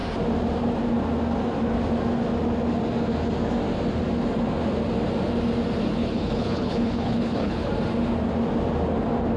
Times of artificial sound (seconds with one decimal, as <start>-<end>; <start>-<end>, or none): 5.9-7.7